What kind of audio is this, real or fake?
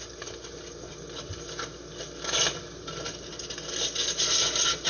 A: real